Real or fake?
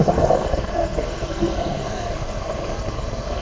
fake